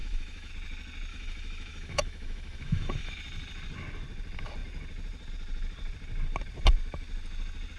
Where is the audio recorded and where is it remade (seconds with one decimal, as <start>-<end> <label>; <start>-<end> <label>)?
0.0-0.5 remade; 0.5-1.1 recorded; 1.1-3.1 remade; 3.1-7.8 recorded